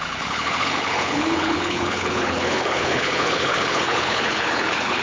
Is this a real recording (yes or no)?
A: no